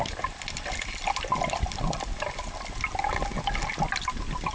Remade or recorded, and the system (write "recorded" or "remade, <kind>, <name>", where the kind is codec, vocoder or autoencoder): recorded